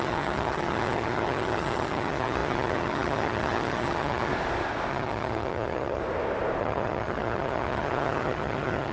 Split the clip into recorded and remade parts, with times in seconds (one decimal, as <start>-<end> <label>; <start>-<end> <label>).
0.0-4.3 remade; 4.3-4.9 recorded; 4.9-6.0 remade; 6.0-6.6 recorded; 6.6-8.9 remade